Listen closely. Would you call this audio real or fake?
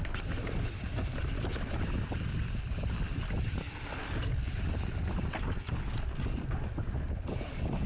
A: real